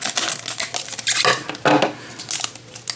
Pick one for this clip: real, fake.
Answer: real